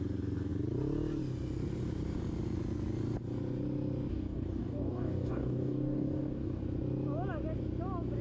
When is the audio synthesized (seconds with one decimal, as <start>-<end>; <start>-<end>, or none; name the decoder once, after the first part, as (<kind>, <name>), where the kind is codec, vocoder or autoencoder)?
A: 4.1-6.6 (codec, DAC)